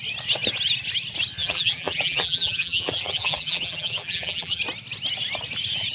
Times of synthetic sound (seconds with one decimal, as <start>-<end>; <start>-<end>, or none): 1.4-4.6